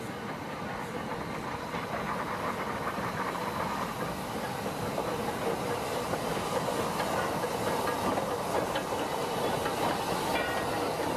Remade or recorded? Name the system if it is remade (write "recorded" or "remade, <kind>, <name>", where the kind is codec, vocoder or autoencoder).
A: recorded